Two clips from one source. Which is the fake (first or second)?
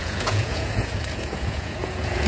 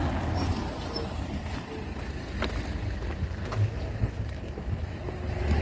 first